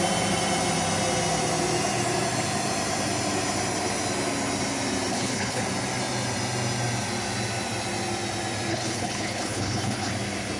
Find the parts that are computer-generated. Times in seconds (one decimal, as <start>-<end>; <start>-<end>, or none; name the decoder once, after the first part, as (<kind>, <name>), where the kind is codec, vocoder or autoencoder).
5.1-5.6 (codec, HILCodec); 8.7-10.1